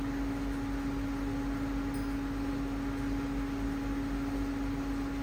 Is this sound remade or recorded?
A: recorded